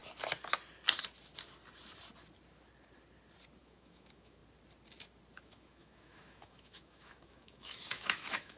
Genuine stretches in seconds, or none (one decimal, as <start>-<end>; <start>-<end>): 0.0-3.6; 4.4-5.4